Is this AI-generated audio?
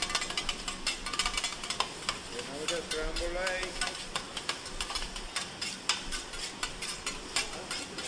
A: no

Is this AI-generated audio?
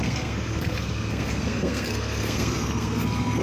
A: yes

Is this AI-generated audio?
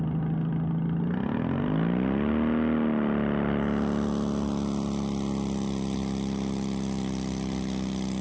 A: no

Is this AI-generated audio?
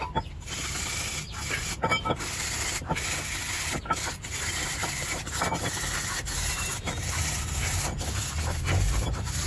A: yes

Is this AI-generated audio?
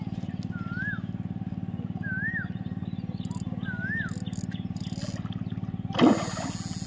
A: no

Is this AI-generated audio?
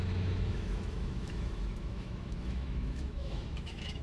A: yes